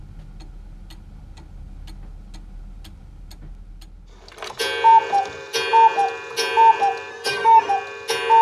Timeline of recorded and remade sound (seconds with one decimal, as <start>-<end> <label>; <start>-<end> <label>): 0.0-7.1 recorded; 7.1-7.7 remade; 7.7-8.4 recorded